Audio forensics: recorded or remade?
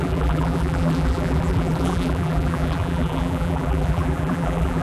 remade